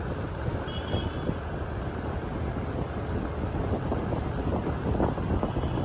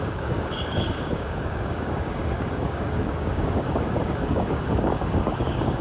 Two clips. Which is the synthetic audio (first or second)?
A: second